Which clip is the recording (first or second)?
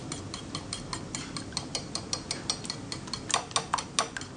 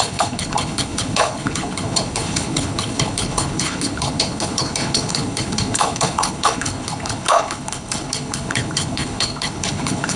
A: first